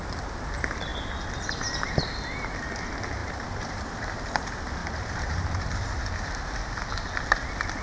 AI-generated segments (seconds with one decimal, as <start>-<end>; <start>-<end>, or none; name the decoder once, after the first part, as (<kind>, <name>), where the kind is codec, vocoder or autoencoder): 3.2-4.2 (vocoder, BigVGAN v2); 4.8-5.7

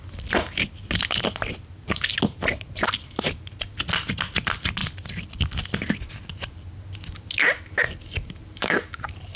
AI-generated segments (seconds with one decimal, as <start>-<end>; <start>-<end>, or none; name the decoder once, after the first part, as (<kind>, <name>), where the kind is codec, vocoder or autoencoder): 2.5-3.6 (vocoder, BigVGAN v2); 7.8-9.4

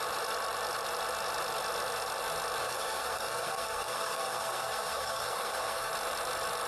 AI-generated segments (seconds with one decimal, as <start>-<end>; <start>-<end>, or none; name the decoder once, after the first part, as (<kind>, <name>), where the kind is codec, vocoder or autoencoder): 2.6-5.9 (codec, SNAC)